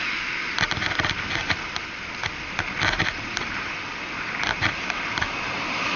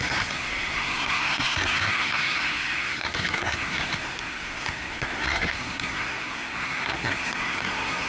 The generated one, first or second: second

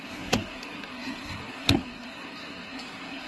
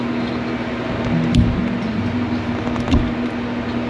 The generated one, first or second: first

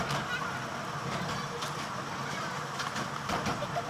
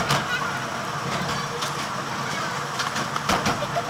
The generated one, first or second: first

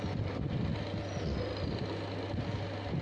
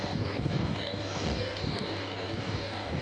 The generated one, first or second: second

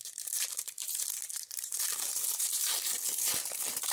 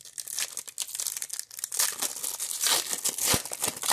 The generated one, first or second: first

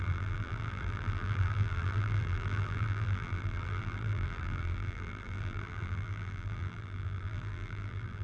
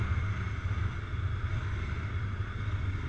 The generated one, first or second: first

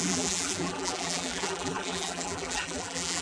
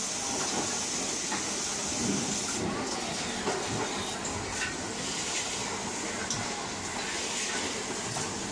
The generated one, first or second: first